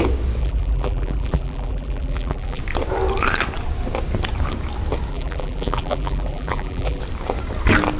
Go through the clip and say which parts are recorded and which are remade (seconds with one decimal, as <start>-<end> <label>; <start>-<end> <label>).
0.0-0.4 recorded; 0.4-2.6 remade; 2.6-5.1 recorded; 5.1-7.0 remade; 7.0-8.0 recorded